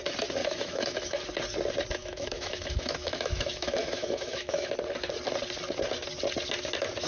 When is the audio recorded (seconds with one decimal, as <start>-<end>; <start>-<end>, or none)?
0.0-0.4; 1.2-2.0; 4.7-7.1